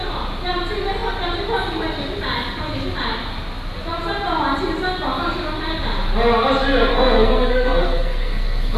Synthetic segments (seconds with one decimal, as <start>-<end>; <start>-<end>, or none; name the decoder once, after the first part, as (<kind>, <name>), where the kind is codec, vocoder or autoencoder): 6.9-8.8 (codec, SNAC)